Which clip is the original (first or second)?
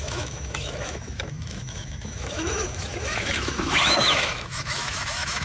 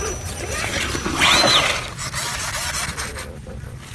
second